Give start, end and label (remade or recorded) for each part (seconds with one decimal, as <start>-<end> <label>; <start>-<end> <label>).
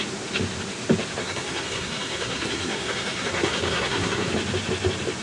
0.0-1.2 recorded; 1.2-4.3 remade; 4.3-5.2 recorded